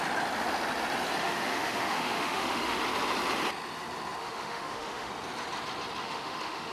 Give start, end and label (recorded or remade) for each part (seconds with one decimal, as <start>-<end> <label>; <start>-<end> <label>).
0.0-1.2 recorded; 1.2-2.8 remade; 2.8-4.2 recorded; 4.2-5.1 remade; 5.1-6.0 recorded; 6.0-6.7 remade